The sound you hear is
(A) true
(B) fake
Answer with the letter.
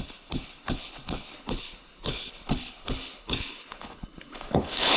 B